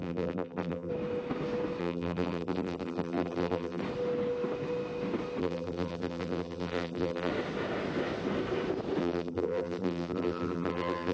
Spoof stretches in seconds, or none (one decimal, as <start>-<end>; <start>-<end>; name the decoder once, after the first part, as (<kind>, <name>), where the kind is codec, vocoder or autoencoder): 0.0-0.9 (vocoder, BigVGAN v2); 1.8-3.8; 5.4-7.3; 9.0-11.1